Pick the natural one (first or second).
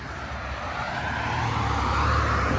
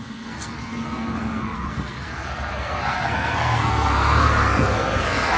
first